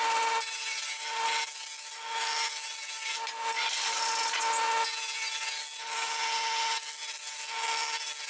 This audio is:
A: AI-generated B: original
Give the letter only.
B